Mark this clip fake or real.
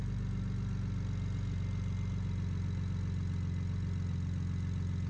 real